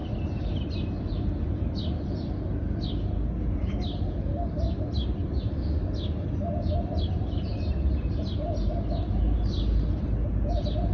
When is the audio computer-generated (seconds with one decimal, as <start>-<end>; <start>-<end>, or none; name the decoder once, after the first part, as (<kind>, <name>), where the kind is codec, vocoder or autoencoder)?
none